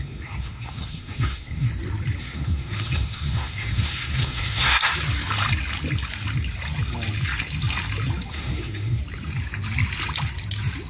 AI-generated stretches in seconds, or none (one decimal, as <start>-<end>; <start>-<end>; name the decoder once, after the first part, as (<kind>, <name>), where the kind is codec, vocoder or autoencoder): 0.0-1.7 (codec, SNAC); 2.2-4.8; 8.3-9.0